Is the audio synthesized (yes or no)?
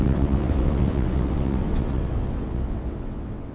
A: yes